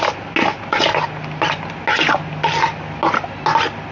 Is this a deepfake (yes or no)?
no